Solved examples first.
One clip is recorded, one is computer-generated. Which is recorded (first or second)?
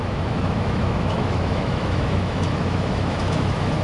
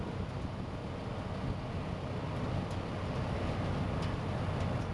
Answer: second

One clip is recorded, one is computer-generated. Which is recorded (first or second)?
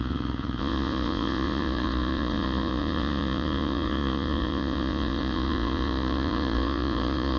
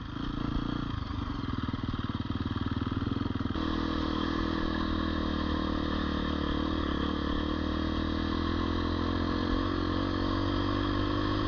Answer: second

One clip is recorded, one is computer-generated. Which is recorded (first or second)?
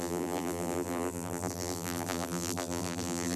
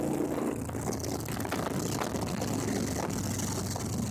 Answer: second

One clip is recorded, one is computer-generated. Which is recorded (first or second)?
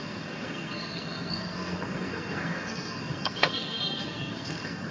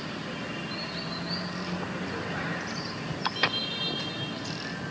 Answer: second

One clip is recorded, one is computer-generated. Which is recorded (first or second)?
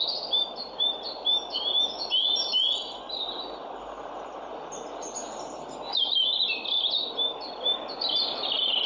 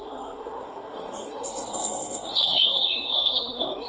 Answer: first